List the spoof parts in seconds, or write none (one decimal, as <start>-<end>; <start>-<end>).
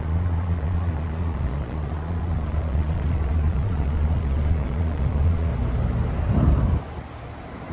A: 0.0-5.5